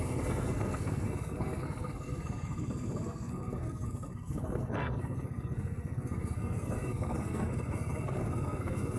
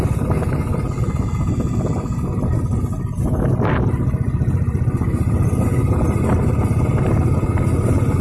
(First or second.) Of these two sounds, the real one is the second